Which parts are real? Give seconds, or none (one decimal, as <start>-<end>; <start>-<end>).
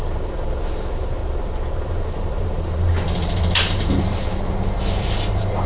1.2-1.8; 4.2-4.8